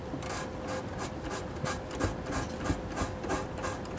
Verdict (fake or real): real